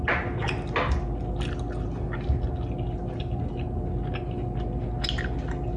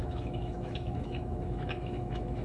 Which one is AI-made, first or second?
second